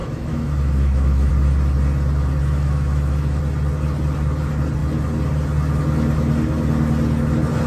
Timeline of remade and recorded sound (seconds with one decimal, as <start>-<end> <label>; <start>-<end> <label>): 0.0-1.3 remade; 1.3-2.4 recorded; 2.4-3.4 remade; 3.4-7.7 recorded